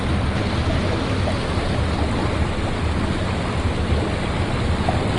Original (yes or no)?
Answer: yes